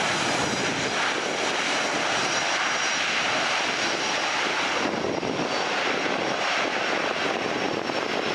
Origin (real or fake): real